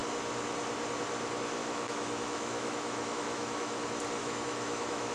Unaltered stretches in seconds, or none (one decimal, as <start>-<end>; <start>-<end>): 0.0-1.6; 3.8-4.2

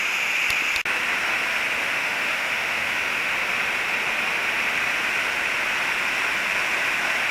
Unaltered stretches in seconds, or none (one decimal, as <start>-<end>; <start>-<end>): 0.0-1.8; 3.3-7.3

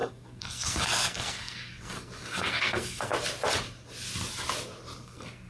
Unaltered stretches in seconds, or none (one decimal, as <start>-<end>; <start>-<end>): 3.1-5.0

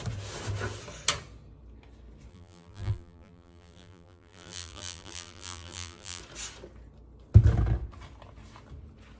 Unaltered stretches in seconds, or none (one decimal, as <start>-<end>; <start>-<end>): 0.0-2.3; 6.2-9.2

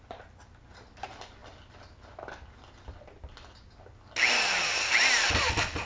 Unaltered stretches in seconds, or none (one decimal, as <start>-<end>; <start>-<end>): 0.0-5.9

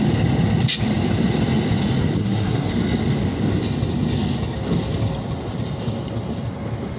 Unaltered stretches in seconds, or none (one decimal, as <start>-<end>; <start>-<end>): 0.0-2.2; 2.7-7.0

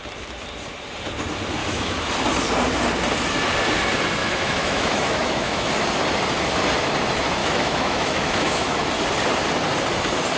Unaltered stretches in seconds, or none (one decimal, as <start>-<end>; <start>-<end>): 0.0-1.6; 2.1-4.2; 5.7-7.4; 8.9-10.4